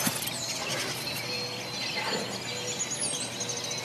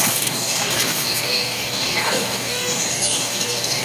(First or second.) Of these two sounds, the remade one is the second